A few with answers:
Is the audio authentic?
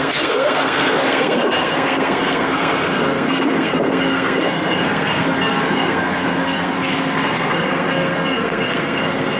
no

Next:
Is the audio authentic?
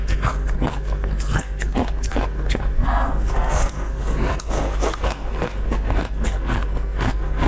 no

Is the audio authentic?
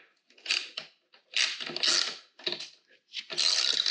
yes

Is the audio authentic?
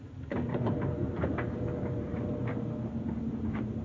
no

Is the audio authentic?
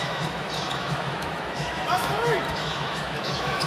no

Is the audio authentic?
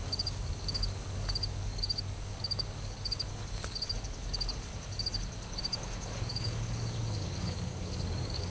no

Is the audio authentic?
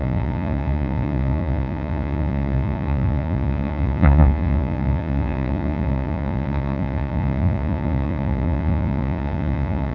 no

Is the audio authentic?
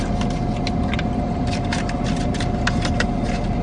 yes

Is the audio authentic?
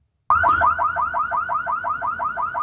yes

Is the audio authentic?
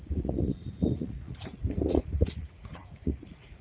no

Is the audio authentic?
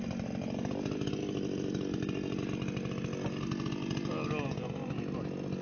yes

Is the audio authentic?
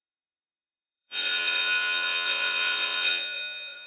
no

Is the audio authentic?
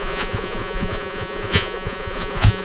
no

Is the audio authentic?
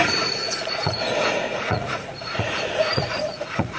no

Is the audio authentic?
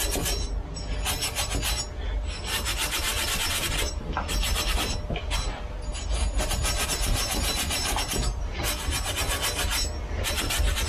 yes